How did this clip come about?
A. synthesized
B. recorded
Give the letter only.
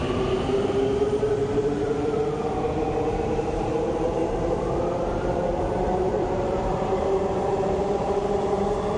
A